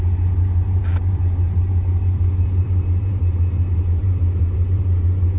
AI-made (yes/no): yes